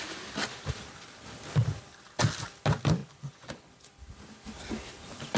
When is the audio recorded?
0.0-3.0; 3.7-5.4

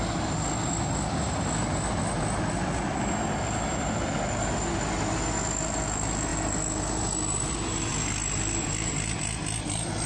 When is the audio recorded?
0.0-10.1

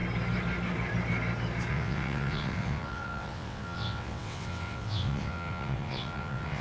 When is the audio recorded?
0.0-1.7

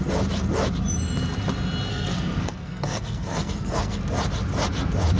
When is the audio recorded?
0.0-1.9; 4.0-5.2

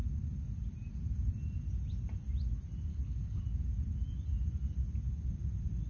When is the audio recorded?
0.0-2.9; 3.4-5.9

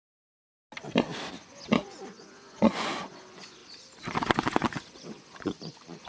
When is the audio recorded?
0.6-1.3; 3.6-4.2

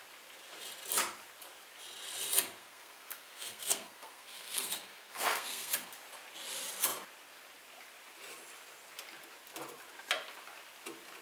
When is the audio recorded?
0.0-2.6; 5.9-11.2